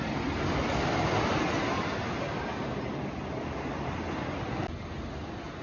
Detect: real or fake real